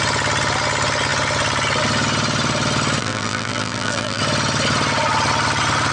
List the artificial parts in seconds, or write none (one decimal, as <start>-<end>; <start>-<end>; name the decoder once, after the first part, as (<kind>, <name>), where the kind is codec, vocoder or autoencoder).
3.0-4.2 (vocoder, BigVGAN v2)